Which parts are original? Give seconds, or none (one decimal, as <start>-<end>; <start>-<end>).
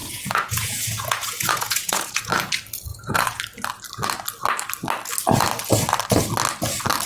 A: 2.3-2.9; 3.4-7.1